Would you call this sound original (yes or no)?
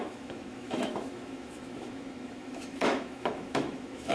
no